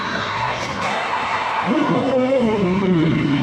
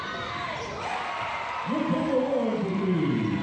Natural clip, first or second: second